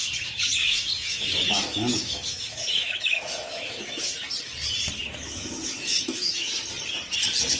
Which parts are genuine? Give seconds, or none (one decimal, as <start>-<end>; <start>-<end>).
0.0-0.6; 4.0-5.0; 6.5-7.6

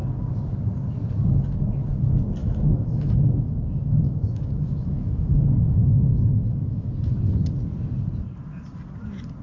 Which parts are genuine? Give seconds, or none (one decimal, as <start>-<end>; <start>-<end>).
0.0-2.4; 6.9-9.4

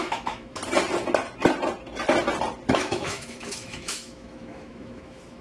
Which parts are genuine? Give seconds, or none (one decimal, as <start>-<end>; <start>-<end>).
0.6-2.7

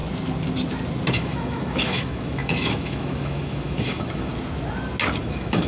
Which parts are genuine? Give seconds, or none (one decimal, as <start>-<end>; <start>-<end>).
0.0-1.1; 4.3-5.2

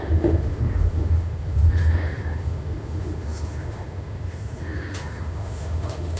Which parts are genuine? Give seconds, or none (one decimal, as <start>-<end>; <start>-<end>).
none

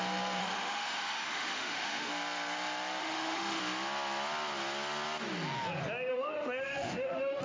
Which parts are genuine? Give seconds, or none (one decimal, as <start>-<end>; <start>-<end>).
0.0-0.4; 2.1-3.0; 3.6-6.1